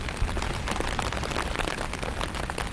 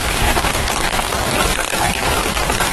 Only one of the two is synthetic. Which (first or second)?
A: second